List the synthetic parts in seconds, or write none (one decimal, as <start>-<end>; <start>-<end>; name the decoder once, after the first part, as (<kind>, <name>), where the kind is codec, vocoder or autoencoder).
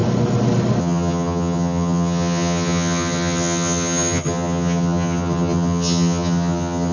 0.8-6.9 (vocoder, HiFi-GAN)